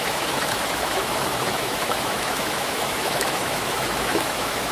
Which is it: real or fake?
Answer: fake